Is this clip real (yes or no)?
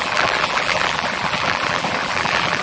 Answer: no